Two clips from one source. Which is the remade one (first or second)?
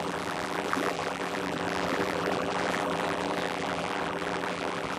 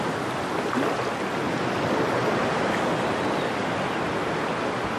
first